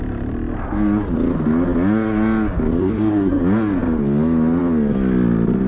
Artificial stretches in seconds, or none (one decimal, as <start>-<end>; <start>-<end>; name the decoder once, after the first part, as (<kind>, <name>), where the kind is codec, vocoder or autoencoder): 2.8-3.4 (codec, SNAC)

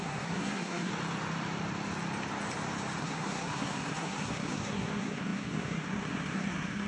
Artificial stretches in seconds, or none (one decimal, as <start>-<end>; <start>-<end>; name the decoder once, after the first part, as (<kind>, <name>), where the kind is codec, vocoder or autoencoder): 0.0-0.9 (codec, SNAC); 3.0-6.9